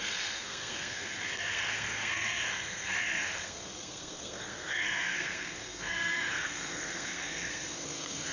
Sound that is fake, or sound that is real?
fake